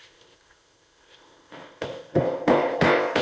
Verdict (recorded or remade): remade